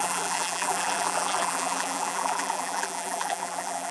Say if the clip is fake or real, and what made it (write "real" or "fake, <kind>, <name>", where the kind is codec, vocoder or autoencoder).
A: fake, vocoder, BigVGAN v2